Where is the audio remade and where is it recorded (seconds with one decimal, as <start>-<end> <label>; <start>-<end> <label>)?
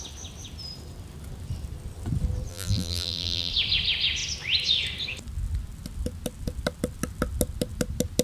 0.0-2.5 recorded; 2.5-3.5 remade; 3.5-8.2 recorded